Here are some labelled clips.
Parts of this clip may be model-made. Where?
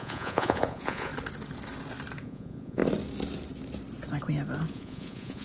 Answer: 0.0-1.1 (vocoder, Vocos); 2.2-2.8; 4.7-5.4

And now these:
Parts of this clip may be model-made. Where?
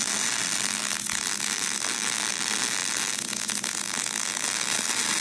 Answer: none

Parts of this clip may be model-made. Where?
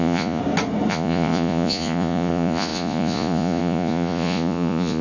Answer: 0.0-0.4 (vocoder, Vocos); 0.9-5.0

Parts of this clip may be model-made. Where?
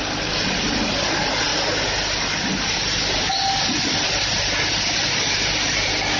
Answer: none